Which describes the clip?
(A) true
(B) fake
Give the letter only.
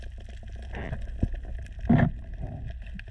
A